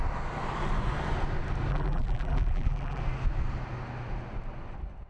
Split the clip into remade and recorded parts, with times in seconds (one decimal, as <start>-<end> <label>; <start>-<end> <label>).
0.0-1.7 recorded; 1.7-3.0 remade; 3.0-5.1 recorded